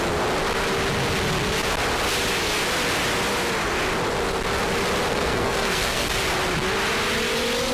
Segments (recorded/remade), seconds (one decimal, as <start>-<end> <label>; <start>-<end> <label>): 0.0-5.1 recorded; 5.1-6.1 remade; 6.1-7.7 recorded

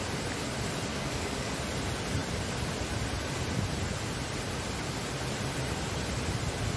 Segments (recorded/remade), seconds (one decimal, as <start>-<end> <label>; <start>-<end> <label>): 0.0-0.9 recorded; 0.9-1.5 remade; 1.5-6.8 recorded

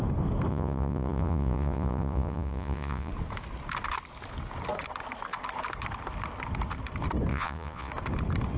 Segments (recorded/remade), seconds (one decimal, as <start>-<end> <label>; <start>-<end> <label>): 0.0-0.5 recorded; 0.5-3.1 remade; 3.1-7.3 recorded; 7.3-7.9 remade; 7.9-8.6 recorded